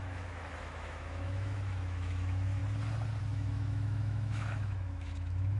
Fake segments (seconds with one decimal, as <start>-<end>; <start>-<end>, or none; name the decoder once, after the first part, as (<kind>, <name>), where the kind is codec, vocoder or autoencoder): 0.0-2.6 (autoencoder, DAC-VAE); 3.2-5.6